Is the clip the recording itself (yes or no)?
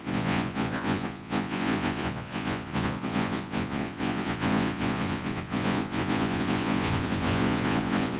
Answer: no